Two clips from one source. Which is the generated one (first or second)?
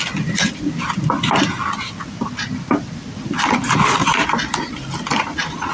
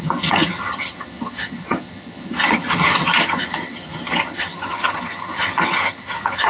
second